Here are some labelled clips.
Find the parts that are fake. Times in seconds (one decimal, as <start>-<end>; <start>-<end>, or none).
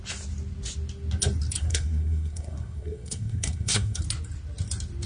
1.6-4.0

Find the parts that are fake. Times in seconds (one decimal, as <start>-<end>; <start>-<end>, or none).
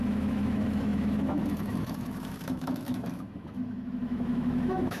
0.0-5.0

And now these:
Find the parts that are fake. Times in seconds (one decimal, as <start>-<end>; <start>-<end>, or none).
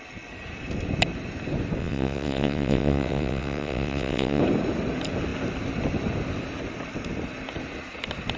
1.8-4.4